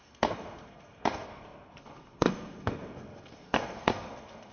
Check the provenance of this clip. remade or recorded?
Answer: remade